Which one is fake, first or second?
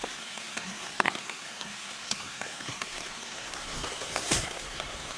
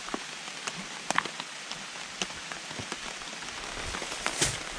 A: first